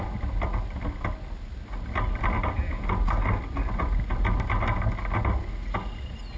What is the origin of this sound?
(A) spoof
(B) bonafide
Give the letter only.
B